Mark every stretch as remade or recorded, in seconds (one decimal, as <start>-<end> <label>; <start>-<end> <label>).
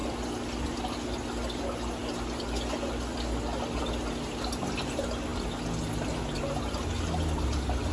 0.0-7.9 recorded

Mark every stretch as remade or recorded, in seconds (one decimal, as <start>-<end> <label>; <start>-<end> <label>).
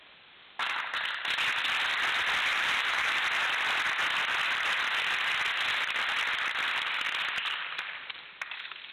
0.0-2.5 recorded; 2.5-3.1 remade; 3.1-8.9 recorded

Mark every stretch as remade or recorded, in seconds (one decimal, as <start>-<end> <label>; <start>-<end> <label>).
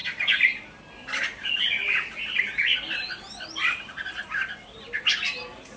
0.0-5.8 remade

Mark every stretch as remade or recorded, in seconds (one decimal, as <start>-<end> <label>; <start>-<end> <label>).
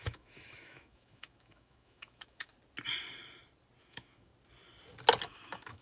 0.0-2.5 remade; 2.5-3.8 recorded; 3.8-4.3 remade; 4.3-5.2 recorded; 5.2-5.8 remade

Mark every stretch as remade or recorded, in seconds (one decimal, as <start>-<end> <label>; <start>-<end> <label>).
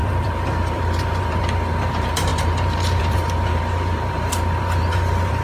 0.0-5.4 remade